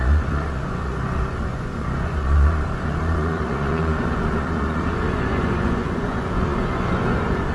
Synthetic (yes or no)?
yes